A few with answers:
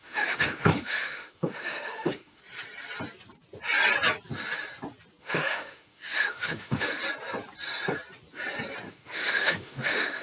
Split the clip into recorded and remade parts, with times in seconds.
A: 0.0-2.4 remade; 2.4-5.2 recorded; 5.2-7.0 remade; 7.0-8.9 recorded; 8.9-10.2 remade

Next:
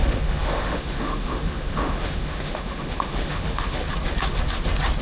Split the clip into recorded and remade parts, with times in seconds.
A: 0.0-3.8 remade; 3.8-5.0 recorded

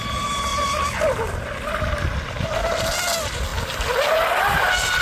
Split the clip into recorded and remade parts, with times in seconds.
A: 0.0-5.0 recorded

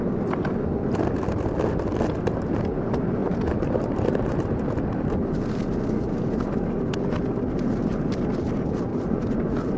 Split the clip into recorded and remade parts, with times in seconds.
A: 0.0-3.2 recorded; 3.2-4.8 remade; 4.8-8.9 recorded; 8.9-9.8 remade

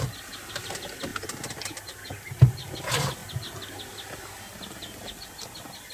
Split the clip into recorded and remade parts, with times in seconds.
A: 0.0-5.9 recorded

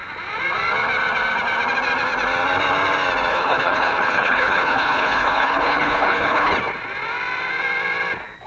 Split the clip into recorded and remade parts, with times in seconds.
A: 0.0-3.3 recorded; 3.3-6.5 remade; 6.5-8.5 recorded